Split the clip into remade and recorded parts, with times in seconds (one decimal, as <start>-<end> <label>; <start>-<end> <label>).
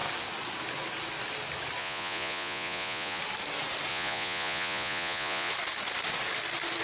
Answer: 0.0-1.8 recorded; 1.8-3.2 remade; 3.2-3.9 recorded; 3.9-5.5 remade; 5.5-6.8 recorded